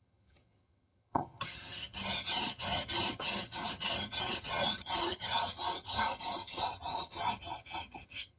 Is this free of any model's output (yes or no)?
no